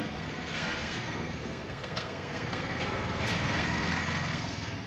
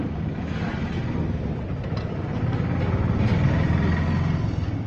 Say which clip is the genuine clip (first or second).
second